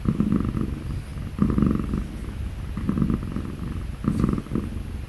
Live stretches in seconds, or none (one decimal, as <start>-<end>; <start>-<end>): 0.0-5.1

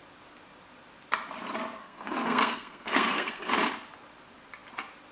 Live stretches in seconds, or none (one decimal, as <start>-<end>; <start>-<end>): 0.0-1.8; 3.5-5.1

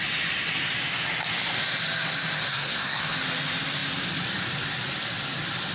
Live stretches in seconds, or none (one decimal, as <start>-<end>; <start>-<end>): 0.0-2.5; 3.0-5.7

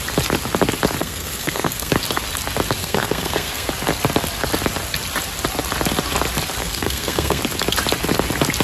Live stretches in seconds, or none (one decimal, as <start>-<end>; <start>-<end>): 0.0-1.0; 1.9-2.8; 3.7-6.6; 7.4-8.6

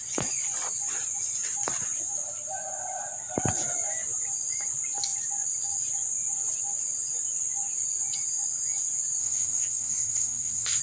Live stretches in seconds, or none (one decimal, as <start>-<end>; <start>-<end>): 0.0-9.2